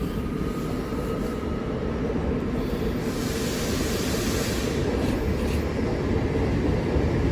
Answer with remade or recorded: recorded